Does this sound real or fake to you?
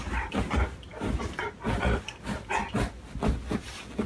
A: real